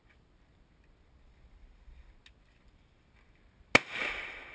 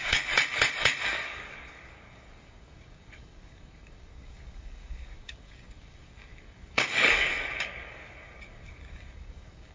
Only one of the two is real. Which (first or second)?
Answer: first